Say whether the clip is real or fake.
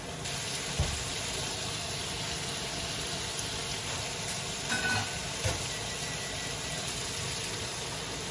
real